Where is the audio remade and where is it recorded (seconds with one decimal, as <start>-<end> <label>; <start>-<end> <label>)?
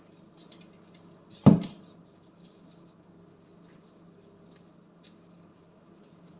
0.0-6.4 recorded